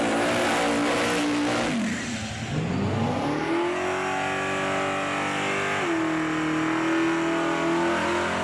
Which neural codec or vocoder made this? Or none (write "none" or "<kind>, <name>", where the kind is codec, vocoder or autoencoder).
none